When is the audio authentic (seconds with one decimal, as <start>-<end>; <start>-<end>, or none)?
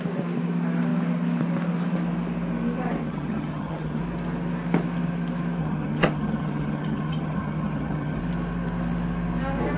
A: 0.0-3.0; 4.0-5.6; 8.2-9.8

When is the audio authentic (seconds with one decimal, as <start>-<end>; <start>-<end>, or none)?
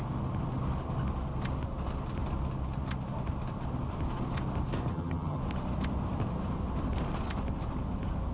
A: 0.0-4.9; 5.4-8.3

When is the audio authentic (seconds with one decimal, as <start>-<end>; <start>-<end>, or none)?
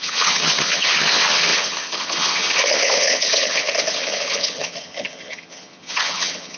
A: none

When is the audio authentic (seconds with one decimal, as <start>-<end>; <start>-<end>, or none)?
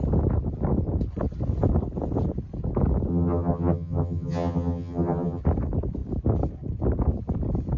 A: 0.0-3.1; 5.4-7.8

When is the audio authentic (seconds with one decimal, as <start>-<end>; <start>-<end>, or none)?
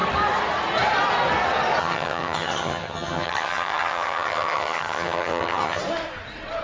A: 0.0-1.8; 5.8-6.6